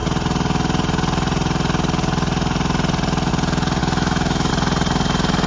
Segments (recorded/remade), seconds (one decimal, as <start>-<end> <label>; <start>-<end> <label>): 0.0-3.8 recorded; 3.8-4.5 remade; 4.5-5.5 recorded